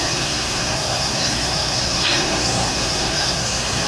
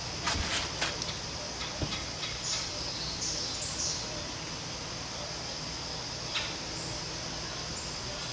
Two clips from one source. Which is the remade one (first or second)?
first